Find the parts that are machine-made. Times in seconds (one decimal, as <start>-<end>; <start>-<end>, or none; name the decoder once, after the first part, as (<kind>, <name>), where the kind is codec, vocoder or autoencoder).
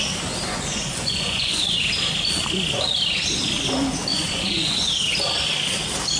0.5-1.8 (vocoder, Vocos); 4.1-4.9